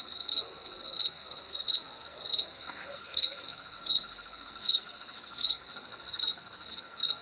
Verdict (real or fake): fake